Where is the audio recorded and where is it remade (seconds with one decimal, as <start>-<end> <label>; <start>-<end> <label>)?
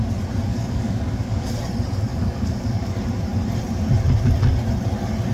0.0-0.5 recorded; 0.5-1.5 remade; 1.5-2.1 recorded; 2.1-2.9 remade; 2.9-5.3 recorded